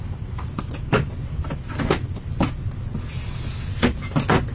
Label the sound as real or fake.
real